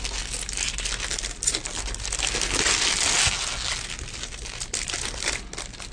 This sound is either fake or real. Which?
real